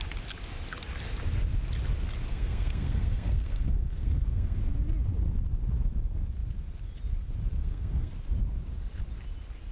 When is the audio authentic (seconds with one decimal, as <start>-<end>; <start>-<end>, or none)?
0.0-2.3; 4.6-7.6; 8.1-9.7